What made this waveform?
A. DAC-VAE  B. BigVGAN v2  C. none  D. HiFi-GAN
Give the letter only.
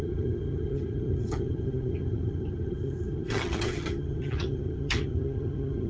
D